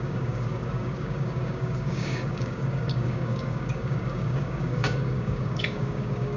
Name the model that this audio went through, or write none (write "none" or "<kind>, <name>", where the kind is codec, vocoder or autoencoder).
codec, DAC